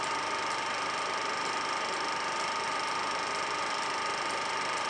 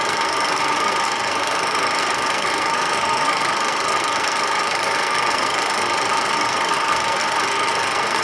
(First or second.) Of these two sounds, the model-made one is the second